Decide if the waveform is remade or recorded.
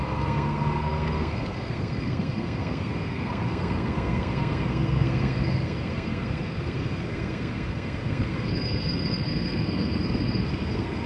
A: remade